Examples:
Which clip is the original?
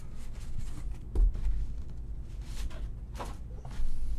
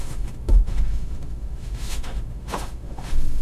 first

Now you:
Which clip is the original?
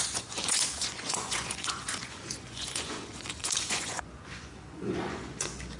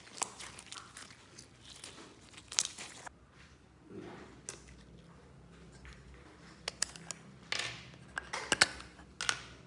second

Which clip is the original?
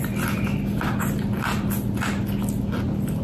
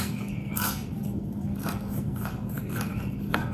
first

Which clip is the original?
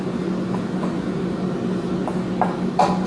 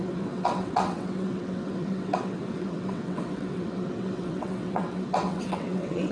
first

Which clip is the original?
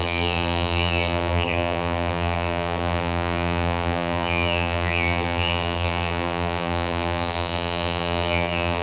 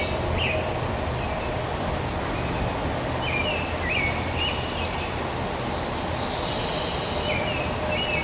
second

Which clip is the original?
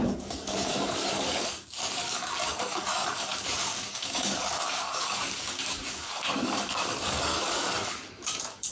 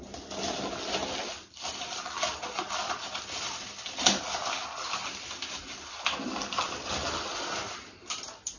second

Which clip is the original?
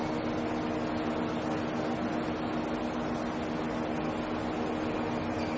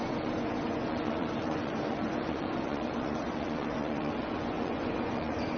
first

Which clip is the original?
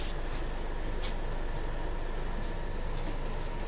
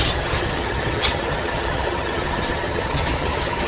first